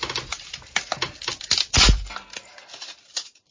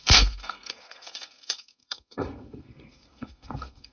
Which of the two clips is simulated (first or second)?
second